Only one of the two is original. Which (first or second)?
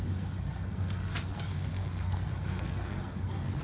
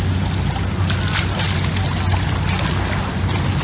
second